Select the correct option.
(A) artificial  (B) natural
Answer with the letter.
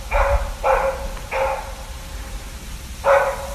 B